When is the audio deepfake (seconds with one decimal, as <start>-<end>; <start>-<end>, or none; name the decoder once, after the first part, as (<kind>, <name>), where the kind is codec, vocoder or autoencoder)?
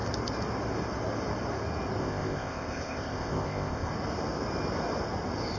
2.0-3.9 (codec, ZipCodec)